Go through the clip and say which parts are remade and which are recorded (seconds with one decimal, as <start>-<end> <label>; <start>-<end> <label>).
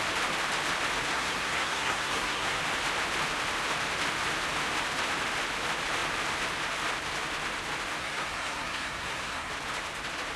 0.0-1.1 recorded; 1.1-2.6 remade; 2.6-8.0 recorded; 8.0-9.5 remade; 9.5-10.4 recorded